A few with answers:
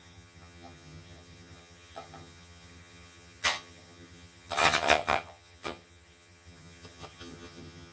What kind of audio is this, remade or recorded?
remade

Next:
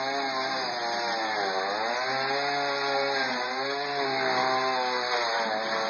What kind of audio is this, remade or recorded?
recorded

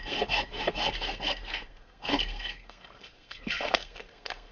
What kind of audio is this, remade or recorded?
remade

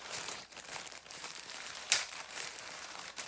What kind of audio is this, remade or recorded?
remade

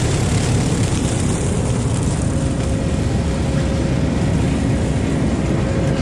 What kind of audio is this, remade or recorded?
recorded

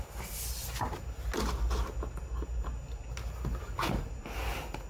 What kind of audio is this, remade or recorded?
recorded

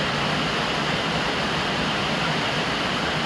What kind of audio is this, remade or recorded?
recorded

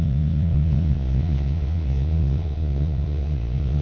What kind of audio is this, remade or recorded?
remade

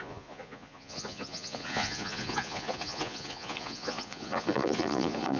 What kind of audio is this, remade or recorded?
remade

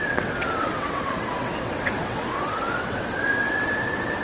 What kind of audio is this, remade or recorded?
remade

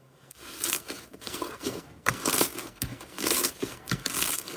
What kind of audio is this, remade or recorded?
remade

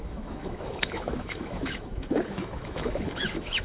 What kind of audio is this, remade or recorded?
remade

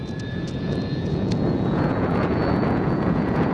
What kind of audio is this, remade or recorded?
remade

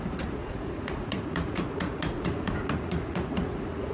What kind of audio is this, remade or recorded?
remade